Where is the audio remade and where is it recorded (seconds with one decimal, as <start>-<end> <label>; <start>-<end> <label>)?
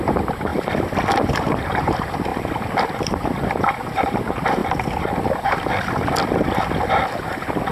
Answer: 0.0-0.5 remade; 0.5-1.3 recorded; 1.3-2.3 remade; 2.3-3.0 recorded; 3.0-4.6 remade; 4.6-7.7 recorded